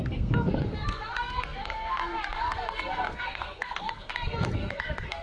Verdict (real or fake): fake